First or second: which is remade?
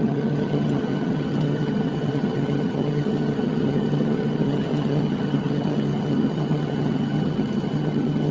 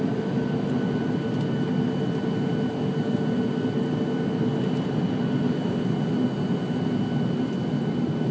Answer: first